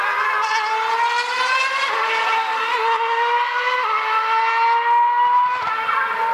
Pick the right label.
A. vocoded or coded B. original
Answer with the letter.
B